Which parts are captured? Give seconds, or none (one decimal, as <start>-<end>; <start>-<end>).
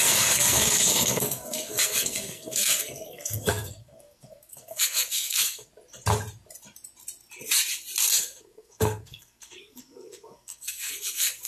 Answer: 5.7-8.2